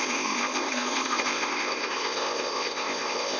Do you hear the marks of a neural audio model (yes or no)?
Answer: yes